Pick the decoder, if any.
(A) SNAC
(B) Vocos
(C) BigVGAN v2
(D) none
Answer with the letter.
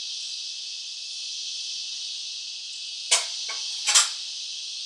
D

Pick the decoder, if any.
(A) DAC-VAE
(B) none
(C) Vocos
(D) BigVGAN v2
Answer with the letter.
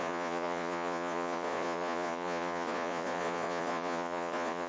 C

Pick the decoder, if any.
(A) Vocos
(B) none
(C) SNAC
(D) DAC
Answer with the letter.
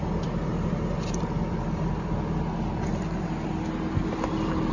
B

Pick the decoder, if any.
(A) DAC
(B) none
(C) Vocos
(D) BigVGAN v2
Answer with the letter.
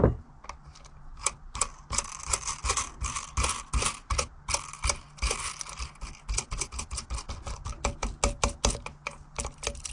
B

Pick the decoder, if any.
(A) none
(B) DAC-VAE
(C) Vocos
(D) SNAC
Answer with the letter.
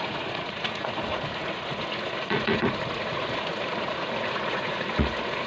C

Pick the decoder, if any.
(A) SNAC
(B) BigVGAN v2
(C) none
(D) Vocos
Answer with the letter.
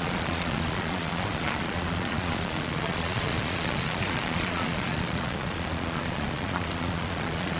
D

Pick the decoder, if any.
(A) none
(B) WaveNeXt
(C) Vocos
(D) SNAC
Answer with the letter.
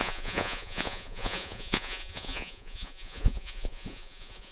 C